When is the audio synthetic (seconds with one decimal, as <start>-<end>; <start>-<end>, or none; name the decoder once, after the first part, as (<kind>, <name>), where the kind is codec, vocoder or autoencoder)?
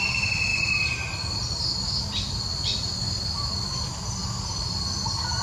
none